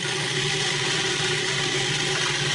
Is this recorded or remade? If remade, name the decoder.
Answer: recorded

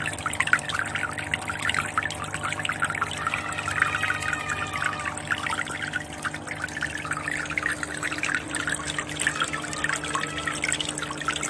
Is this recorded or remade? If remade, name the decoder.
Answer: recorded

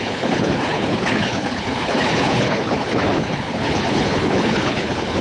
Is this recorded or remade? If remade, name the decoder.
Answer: remade, codec, HILCodec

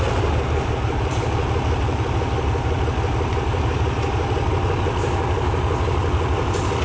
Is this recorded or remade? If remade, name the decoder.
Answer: recorded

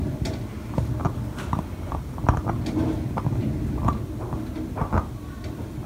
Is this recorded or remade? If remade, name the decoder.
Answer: recorded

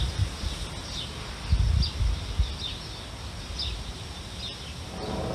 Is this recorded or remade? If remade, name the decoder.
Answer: recorded